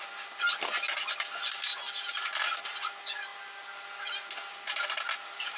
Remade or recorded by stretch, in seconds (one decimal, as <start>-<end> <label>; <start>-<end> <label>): 0.0-5.6 recorded